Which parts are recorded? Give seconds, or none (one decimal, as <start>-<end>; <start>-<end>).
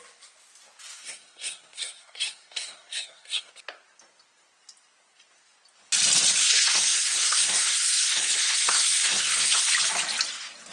0.0-0.9; 3.5-6.4; 9.7-10.7